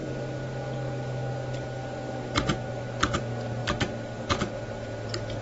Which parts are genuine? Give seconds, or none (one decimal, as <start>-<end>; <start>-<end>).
0.0-5.4